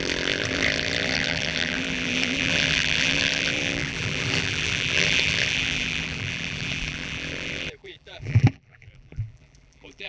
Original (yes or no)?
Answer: no